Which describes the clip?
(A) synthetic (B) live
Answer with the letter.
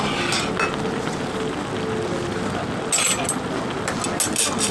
B